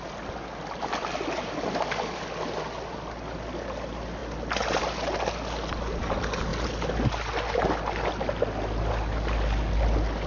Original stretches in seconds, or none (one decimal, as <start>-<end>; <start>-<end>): 0.0-10.3